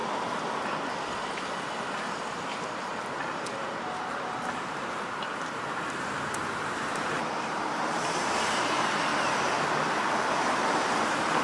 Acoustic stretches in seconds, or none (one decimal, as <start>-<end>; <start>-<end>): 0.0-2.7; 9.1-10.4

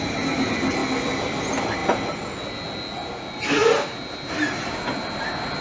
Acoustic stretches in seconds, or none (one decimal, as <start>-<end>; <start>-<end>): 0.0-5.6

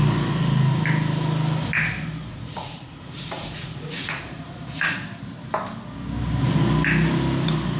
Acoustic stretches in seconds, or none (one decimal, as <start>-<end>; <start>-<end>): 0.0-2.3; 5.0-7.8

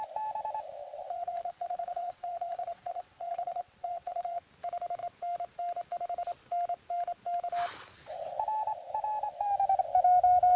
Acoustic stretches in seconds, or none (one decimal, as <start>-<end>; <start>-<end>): 0.0-0.8; 4.4-10.6